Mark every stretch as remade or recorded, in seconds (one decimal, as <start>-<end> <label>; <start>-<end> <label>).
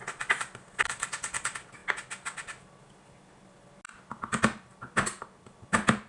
0.0-6.1 recorded